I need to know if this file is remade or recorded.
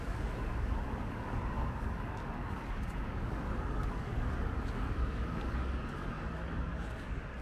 remade